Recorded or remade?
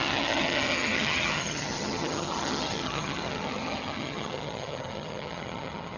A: remade